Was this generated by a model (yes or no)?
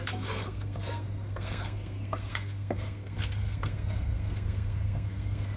yes